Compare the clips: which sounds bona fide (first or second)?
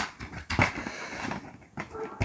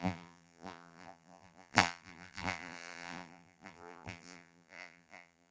first